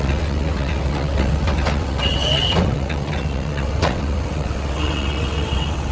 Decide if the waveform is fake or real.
fake